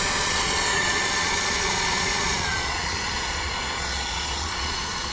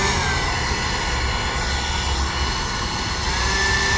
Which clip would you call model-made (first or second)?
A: first